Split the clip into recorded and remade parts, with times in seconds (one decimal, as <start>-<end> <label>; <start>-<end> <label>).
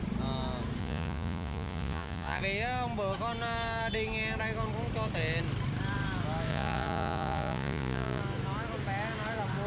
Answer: 0.0-0.8 recorded; 0.8-2.4 remade; 2.4-6.5 recorded; 6.5-8.2 remade; 8.2-9.7 recorded